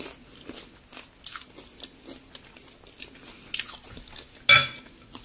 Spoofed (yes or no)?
no